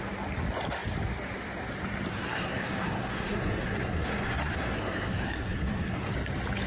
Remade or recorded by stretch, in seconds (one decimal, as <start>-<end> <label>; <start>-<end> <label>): 0.0-2.1 recorded; 2.1-6.1 remade; 6.1-6.7 recorded

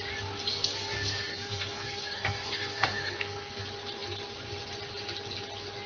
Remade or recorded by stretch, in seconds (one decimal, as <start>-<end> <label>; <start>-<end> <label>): 0.0-0.5 recorded; 0.5-3.6 remade; 3.6-5.9 recorded